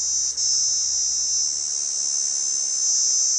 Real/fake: real